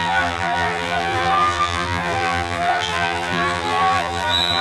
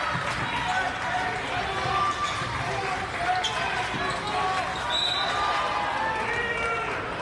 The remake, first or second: first